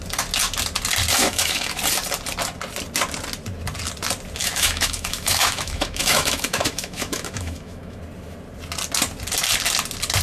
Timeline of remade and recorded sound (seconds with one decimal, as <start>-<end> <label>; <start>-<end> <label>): 0.0-1.2 recorded; 1.2-1.8 remade; 1.8-4.4 recorded; 4.4-8.0 remade; 8.0-10.2 recorded